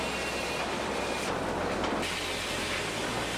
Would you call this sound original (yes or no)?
yes